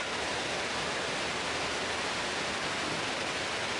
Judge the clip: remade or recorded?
recorded